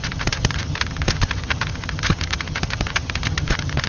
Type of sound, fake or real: fake